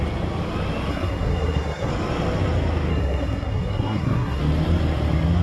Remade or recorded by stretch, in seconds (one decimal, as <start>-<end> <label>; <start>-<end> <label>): 0.0-0.9 recorded; 0.9-1.9 remade; 1.9-2.9 recorded; 2.9-4.4 remade; 4.4-5.4 recorded